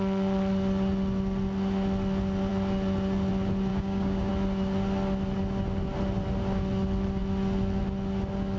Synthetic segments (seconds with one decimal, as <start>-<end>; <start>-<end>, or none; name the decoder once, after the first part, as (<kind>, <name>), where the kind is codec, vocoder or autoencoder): 3.7-4.3 (codec, DAC)

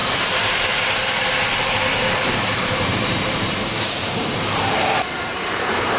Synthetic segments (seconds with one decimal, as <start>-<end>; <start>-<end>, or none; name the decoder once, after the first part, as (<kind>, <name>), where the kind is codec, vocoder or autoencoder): 2.4-6.0 (vocoder, BigVGAN v2)

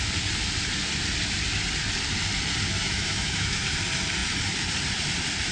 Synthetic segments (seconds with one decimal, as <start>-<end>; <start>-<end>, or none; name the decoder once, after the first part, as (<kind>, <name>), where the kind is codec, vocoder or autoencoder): 2.8-3.6 (autoencoder, DAC-VAE)

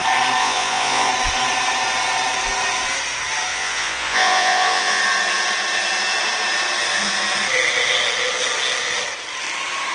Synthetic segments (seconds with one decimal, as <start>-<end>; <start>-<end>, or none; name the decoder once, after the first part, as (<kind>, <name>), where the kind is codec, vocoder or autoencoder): 0.4-1.1 (vocoder, Vocos); 3.5-5.0

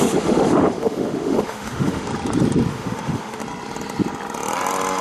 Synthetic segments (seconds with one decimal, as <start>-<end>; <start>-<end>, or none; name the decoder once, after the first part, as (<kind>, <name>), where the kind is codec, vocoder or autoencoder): 0.0-2.1 (autoencoder, DAC-VAE); 2.7-3.4

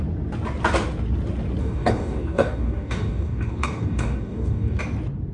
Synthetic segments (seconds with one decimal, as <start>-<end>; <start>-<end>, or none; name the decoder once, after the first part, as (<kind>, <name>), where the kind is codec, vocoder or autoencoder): 1.6-4.8 (codec, DAC)

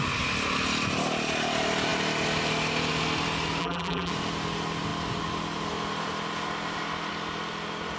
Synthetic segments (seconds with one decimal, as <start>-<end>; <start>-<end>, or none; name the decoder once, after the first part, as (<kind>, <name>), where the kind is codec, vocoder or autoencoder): 3.6-4.1 (vocoder, BigVGAN v2)